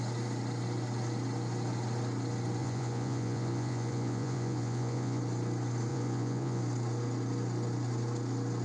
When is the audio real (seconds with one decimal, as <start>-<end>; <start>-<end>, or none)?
0.0-2.6; 5.2-5.9; 6.6-8.6